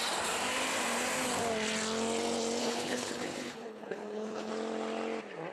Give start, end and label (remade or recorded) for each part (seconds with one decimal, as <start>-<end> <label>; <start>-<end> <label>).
0.0-2.6 recorded; 2.6-4.5 remade; 4.5-5.5 recorded